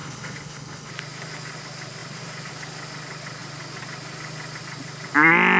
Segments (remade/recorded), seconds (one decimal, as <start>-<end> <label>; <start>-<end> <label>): 0.0-0.9 remade; 0.9-5.6 recorded